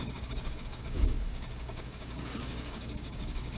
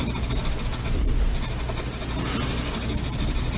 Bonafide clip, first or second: second